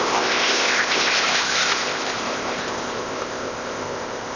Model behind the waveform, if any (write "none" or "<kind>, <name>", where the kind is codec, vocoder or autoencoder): codec, ZipCodec